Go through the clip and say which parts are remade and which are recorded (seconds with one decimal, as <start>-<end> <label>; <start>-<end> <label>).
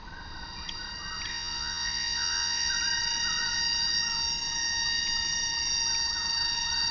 0.0-1.3 recorded; 1.3-2.7 remade; 2.7-6.9 recorded